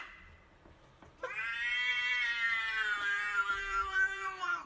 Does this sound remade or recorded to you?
remade